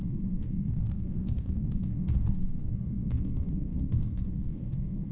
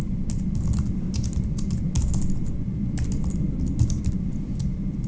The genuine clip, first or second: second